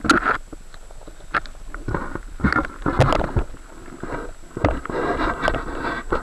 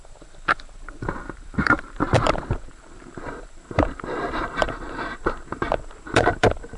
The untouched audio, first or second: first